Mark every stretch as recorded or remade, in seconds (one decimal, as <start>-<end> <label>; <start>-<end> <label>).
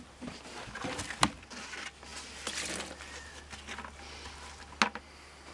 0.0-5.5 recorded